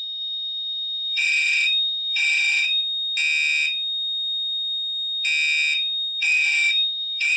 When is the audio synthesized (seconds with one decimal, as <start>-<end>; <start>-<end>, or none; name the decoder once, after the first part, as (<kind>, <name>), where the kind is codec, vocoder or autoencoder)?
0.0-2.8 (autoencoder, DAC-VAE); 6.2-7.4